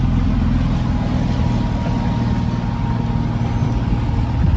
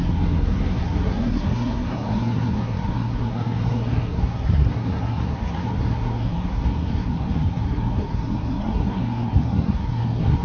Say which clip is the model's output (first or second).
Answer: second